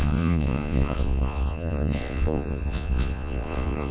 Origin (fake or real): fake